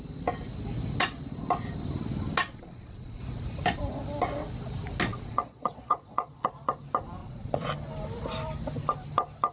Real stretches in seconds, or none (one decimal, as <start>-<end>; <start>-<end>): 0.0-2.4; 3.2-5.1; 6.5-7.2; 7.7-9.5